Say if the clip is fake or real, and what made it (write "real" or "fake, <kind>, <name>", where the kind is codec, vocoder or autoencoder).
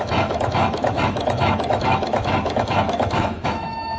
fake, autoencoder, DAC-VAE